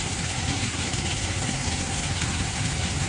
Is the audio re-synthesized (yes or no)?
yes